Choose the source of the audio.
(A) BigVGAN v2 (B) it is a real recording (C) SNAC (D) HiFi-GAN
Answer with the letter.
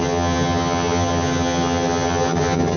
D